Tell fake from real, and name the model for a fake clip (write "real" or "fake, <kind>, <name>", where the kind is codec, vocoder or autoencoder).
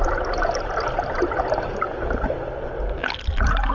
real